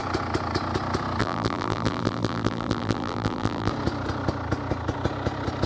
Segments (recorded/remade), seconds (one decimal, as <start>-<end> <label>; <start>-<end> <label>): 0.0-1.2 recorded; 1.2-3.7 remade; 3.7-5.7 recorded